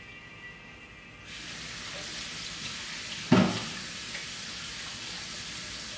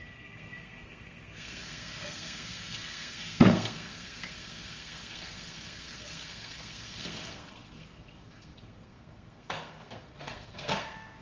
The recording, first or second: first